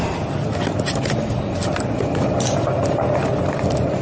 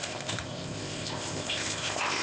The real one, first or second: first